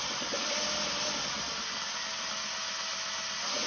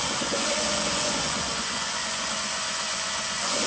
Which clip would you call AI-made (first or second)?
second